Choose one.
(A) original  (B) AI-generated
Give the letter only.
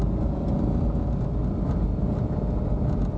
A